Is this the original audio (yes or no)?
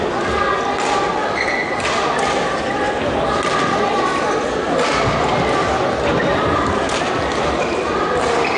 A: yes